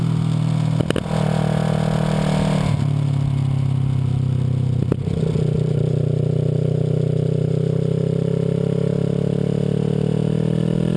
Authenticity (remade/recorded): recorded